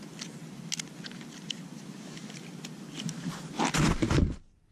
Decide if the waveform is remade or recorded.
recorded